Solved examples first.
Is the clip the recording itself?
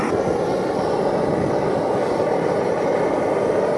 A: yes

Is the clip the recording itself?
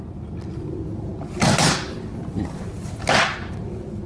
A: yes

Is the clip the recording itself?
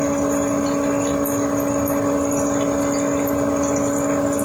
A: yes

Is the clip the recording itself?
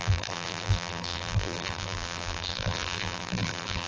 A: no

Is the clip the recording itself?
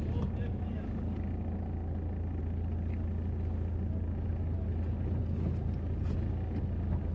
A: yes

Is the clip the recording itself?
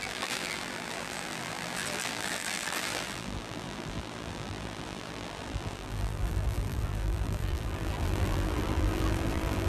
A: no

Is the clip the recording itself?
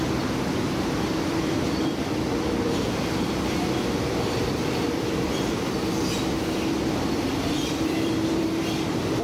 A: no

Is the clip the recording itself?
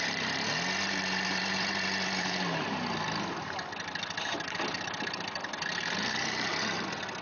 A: no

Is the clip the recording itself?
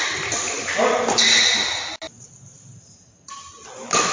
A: yes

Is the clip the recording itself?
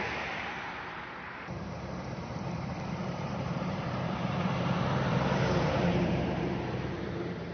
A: no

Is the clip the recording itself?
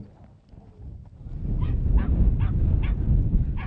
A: yes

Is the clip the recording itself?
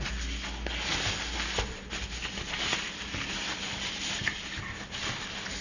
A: yes